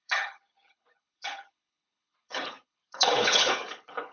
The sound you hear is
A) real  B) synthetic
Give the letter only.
B